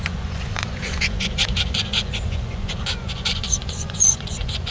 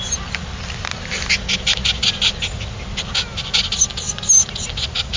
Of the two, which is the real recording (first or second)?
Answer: second